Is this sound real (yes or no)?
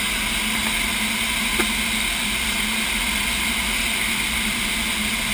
yes